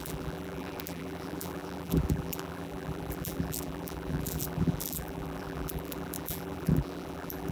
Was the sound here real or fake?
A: fake